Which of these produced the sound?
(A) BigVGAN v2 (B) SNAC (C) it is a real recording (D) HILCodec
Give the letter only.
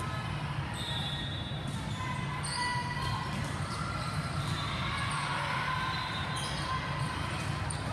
C